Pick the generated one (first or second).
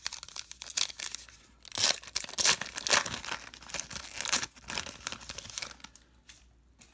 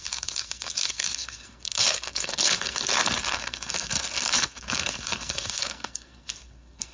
second